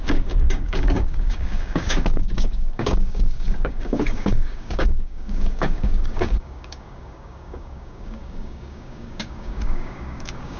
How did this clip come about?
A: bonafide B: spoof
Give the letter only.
B